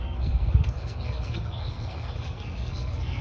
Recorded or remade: remade